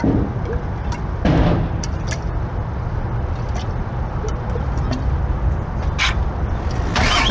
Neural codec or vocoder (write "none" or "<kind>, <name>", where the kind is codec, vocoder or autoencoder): none